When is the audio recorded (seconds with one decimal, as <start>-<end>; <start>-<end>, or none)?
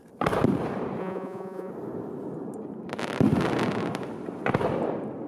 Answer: 0.0-1.0; 1.7-5.3